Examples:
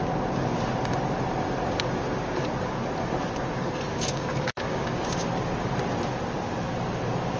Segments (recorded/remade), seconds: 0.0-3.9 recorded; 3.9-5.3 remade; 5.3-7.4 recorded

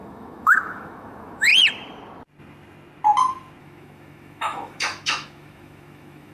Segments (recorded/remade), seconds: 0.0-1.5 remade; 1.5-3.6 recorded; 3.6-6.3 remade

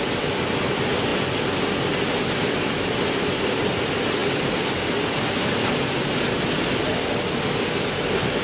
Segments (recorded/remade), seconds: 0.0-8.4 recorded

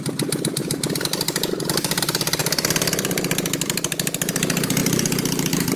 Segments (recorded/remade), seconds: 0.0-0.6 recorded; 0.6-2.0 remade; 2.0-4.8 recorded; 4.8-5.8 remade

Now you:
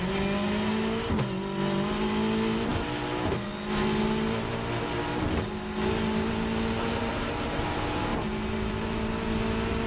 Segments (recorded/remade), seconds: 0.0-9.9 recorded

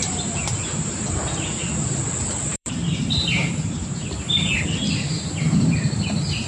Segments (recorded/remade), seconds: 0.0-2.5 recorded; 2.5-4.5 remade; 4.5-6.5 recorded

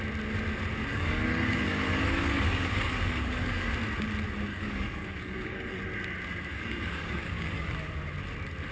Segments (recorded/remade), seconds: 0.0-0.9 recorded; 0.9-3.7 remade; 3.7-4.5 recorded; 4.5-5.8 remade; 5.8-6.5 recorded; 6.5-7.7 remade; 7.7-8.7 recorded